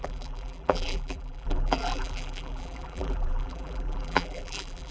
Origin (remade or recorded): remade